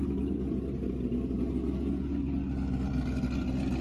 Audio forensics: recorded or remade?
recorded